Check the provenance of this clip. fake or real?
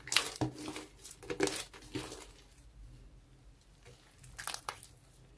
real